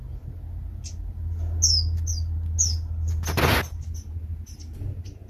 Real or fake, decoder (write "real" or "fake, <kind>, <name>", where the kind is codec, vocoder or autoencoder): real